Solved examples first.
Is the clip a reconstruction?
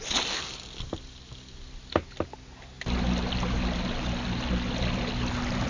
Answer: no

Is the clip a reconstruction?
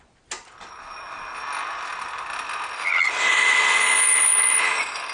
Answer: no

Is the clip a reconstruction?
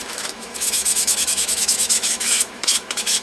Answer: yes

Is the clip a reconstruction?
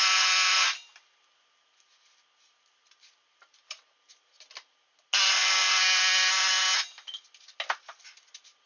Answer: no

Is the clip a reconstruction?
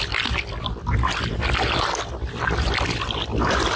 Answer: no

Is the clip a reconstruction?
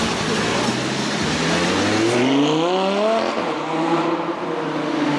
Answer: no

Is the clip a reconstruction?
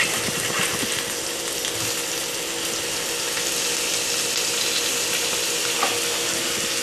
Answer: no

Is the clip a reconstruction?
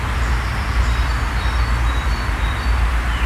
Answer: no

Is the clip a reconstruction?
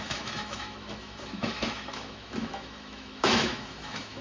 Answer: yes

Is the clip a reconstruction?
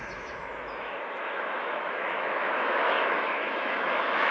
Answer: yes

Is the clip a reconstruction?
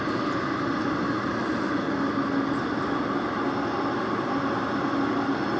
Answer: no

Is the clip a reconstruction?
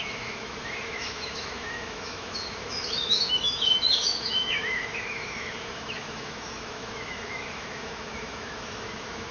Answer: yes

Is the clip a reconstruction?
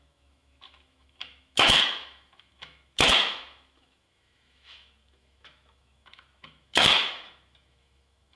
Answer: yes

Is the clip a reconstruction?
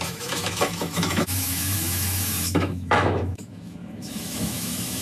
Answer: yes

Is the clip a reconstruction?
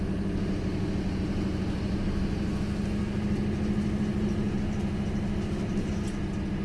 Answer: no